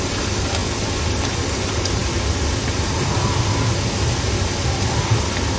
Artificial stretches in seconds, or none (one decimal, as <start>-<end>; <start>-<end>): none